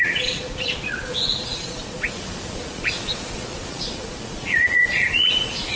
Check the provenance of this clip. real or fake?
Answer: fake